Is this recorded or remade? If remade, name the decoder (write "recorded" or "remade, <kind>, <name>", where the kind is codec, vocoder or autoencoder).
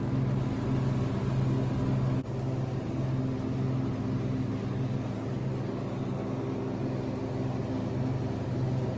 recorded